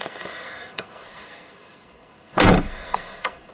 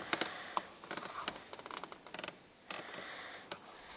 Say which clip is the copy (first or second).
first